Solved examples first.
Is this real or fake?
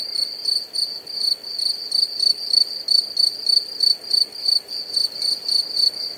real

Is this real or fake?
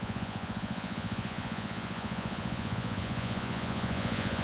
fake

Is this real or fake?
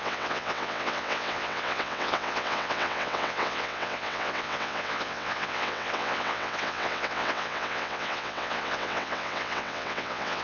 fake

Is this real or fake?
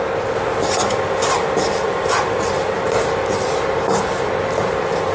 real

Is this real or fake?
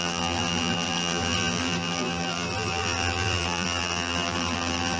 fake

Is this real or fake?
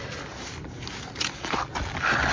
real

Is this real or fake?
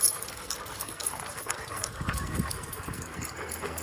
fake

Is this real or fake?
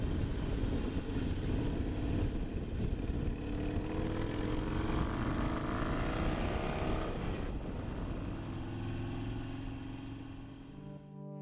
real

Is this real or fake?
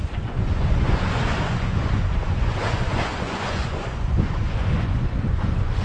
fake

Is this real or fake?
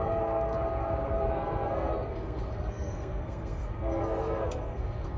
fake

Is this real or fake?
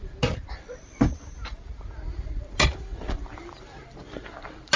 real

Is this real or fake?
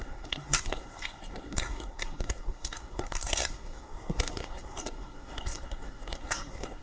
fake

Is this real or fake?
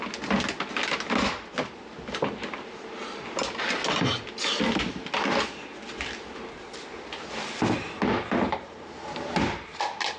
real